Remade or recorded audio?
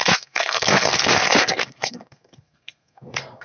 remade